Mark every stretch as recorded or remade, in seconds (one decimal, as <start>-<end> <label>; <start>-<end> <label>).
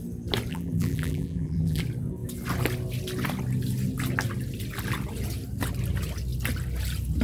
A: 0.0-0.5 recorded; 0.5-1.8 remade; 1.8-7.2 recorded